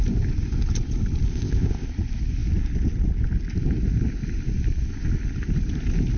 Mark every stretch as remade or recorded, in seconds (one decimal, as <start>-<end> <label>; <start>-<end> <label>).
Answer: 0.0-1.3 recorded; 1.3-1.9 remade; 1.9-6.2 recorded